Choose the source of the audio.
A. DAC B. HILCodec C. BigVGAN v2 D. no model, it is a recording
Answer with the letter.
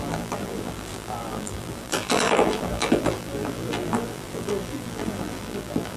C